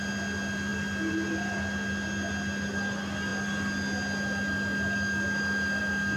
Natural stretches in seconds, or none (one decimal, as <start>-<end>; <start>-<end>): 0.0-6.2